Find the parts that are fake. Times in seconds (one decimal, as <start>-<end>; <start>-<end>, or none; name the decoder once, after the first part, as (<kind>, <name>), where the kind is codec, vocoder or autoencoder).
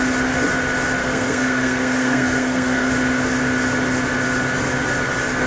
1.0-2.9 (codec, SNAC)